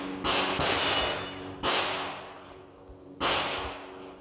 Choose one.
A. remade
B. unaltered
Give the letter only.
B